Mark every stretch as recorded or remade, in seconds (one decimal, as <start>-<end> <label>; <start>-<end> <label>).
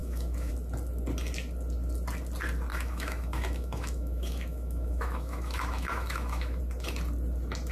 0.0-0.5 remade; 0.5-2.7 recorded; 2.7-6.6 remade; 6.6-7.7 recorded